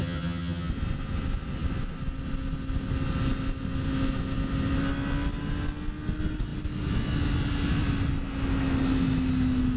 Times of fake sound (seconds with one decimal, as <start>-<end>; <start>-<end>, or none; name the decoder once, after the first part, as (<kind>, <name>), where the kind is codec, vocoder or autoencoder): 0.0-0.7 (vocoder, HiFi-GAN)